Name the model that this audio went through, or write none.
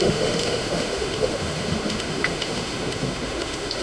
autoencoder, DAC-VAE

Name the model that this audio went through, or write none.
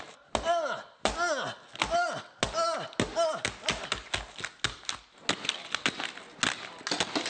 none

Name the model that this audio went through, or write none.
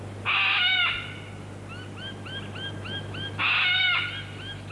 none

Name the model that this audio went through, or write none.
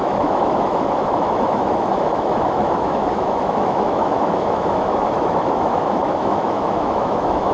autoencoder, DAC-VAE